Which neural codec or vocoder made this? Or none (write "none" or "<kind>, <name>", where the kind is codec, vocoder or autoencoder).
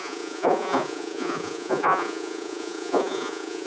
vocoder, Vocos